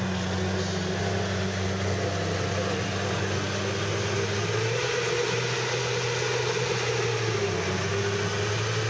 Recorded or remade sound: recorded